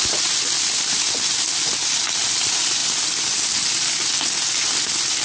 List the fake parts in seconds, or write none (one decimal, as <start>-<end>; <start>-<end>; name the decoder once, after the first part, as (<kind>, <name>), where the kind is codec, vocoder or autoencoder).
none